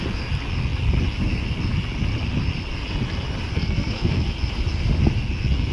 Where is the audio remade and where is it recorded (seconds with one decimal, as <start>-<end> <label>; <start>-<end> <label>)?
0.0-3.5 recorded; 3.5-4.3 remade; 4.3-5.7 recorded